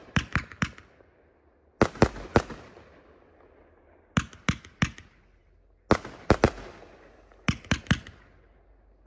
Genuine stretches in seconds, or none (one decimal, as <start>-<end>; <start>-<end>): 0.0-9.1